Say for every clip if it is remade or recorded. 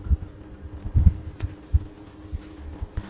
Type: recorded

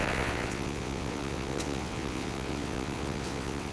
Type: remade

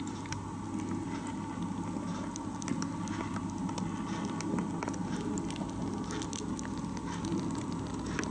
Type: recorded